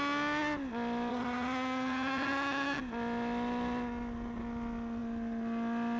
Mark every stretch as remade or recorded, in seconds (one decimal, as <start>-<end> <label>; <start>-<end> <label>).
0.0-1.1 recorded; 1.1-2.8 remade; 2.8-6.0 recorded